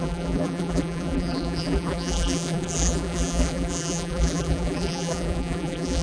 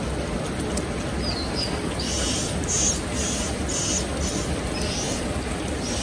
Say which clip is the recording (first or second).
second